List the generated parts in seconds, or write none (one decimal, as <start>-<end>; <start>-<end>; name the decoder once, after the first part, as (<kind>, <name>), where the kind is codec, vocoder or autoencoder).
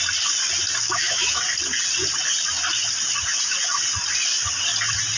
0.8-1.4 (autoencoder, DAC-VAE)